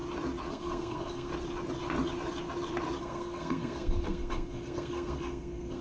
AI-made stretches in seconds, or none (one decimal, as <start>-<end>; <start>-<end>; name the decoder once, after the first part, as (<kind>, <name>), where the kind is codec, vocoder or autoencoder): 0.5-1.3 (codec, SNAC); 3.0-5.8